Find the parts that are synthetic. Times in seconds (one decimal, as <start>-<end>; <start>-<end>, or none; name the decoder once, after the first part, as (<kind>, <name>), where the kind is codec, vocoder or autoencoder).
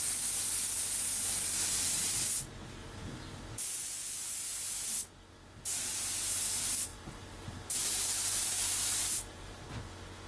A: 2.8-3.4 (vocoder, BigVGAN v2); 6.9-9.6